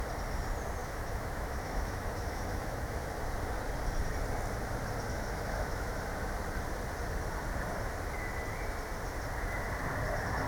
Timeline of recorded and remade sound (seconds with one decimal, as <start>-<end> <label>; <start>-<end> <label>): 0.0-0.8 recorded; 0.8-3.0 remade; 3.0-5.1 recorded; 5.1-6.0 remade; 6.0-10.5 recorded

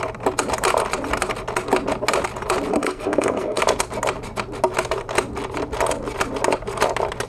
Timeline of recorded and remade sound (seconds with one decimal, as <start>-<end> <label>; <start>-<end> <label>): 0.0-2.7 recorded; 2.7-3.6 remade; 3.6-7.3 recorded